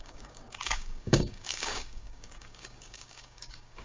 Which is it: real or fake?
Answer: fake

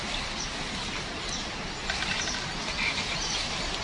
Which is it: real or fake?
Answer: real